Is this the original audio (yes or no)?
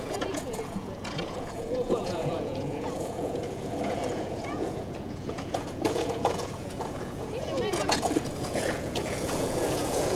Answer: no